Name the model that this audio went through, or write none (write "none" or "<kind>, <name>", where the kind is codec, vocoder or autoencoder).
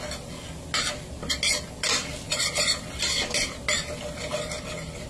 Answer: none